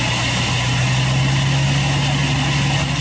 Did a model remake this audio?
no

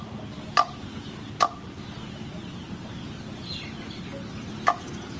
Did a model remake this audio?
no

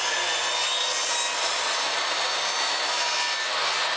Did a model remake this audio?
no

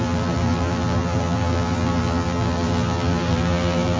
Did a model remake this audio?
yes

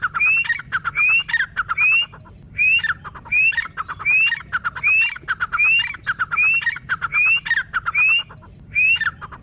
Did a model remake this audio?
no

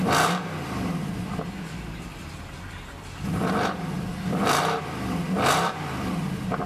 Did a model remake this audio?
yes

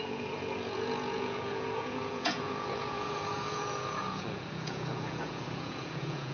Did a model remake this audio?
yes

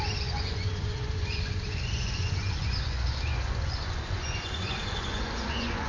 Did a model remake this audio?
yes